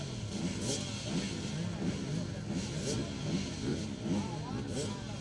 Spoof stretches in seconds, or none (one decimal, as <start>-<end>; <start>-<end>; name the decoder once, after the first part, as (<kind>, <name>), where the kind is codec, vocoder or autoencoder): none